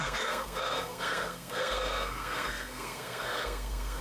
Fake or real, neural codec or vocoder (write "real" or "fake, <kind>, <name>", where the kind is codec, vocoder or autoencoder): fake, codec, SNAC